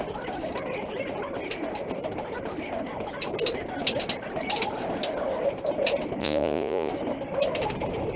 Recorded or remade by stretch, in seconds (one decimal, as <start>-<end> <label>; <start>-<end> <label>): 0.0-6.2 recorded; 6.2-6.9 remade; 6.9-8.2 recorded